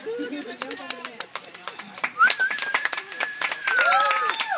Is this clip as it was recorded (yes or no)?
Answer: no